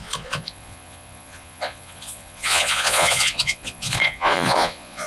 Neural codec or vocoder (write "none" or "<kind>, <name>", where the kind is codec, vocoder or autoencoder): vocoder, Vocos